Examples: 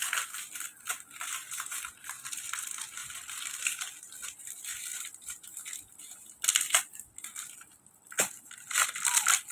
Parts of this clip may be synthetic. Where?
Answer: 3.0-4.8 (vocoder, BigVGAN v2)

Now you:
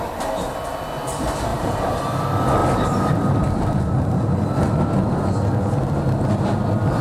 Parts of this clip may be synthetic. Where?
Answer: 1.5-2.0 (vocoder, BigVGAN v2); 2.6-4.2

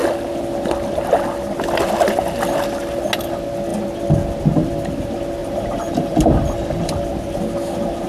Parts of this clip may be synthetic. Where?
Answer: 5.4-7.4 (vocoder, BigVGAN v2)

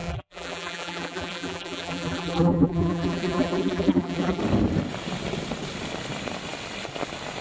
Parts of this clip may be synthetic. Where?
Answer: 0.0-4.4 (vocoder, BigVGAN v2)

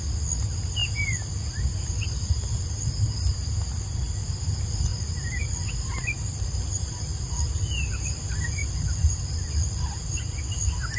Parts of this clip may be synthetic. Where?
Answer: 4.9-6.8 (vocoder, BigVGAN v2); 8.6-10.4